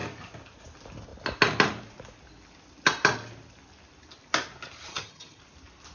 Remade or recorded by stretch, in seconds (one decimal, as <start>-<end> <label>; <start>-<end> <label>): 0.0-4.9 recorded; 4.9-5.4 remade; 5.4-5.9 recorded